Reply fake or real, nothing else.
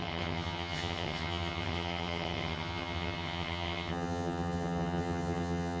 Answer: fake